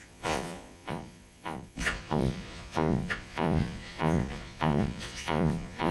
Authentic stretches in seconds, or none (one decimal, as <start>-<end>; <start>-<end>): none